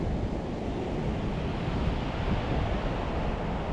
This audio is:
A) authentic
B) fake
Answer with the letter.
A